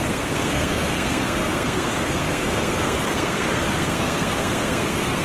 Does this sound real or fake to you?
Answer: fake